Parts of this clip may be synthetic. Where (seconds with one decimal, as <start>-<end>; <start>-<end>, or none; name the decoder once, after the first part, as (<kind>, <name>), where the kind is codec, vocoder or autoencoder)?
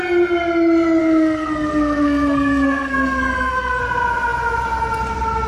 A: 1.0-3.8 (codec, SNAC)